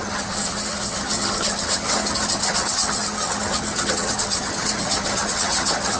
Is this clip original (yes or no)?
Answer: no